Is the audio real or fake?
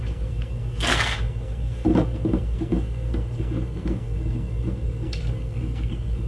fake